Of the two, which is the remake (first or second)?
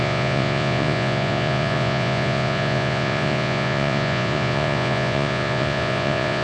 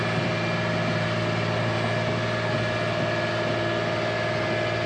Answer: first